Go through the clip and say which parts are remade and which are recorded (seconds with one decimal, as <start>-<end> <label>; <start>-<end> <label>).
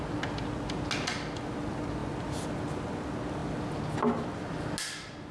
0.0-5.3 recorded